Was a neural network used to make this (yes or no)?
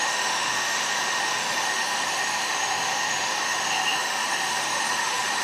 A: yes